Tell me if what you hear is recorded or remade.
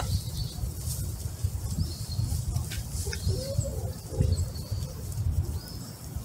recorded